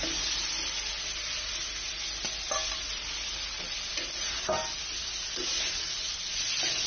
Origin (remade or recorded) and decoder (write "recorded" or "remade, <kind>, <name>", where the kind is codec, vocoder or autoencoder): recorded